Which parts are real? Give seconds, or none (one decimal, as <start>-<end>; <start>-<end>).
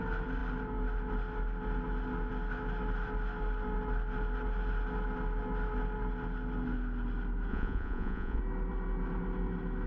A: 0.0-7.5; 8.4-9.9